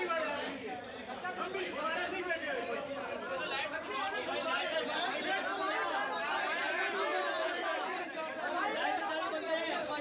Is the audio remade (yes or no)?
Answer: yes